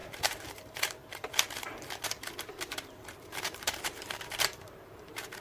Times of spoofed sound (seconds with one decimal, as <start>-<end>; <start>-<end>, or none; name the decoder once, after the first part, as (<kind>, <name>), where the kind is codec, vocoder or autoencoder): 0.0-5.4 (vocoder, BigVGAN v2)